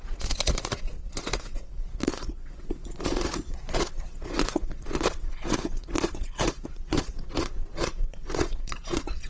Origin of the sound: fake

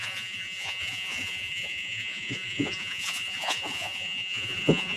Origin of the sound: fake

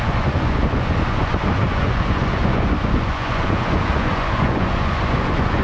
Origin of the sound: fake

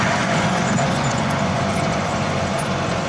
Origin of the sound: fake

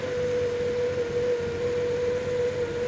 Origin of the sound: real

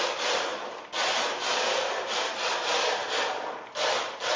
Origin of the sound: real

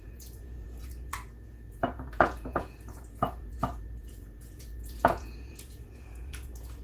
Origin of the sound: fake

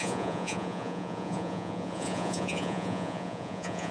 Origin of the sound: fake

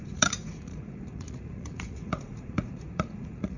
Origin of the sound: fake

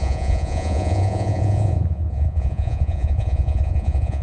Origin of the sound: fake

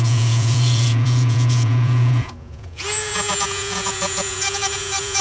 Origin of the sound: fake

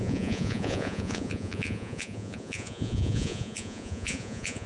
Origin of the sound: fake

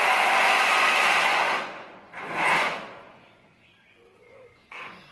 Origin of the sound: fake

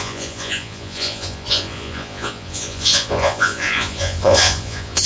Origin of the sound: fake